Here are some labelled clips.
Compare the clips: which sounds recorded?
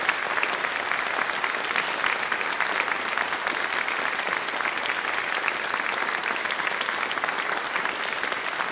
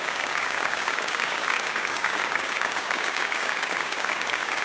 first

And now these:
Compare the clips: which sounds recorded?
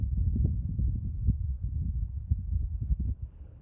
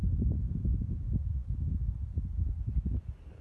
second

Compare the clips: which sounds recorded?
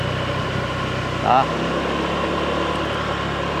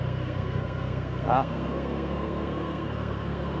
first